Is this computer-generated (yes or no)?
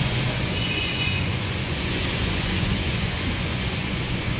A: yes